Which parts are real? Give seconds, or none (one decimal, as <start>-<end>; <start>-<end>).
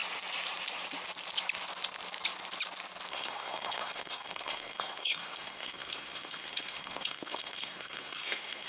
0.0-3.1